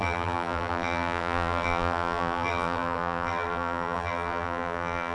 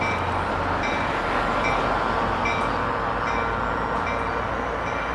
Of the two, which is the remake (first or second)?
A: first